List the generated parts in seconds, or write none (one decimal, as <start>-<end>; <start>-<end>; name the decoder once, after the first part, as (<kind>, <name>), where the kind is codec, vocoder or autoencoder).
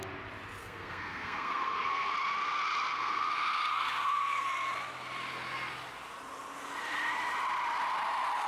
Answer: 0.6-2.1 (codec, SNAC); 2.9-4.5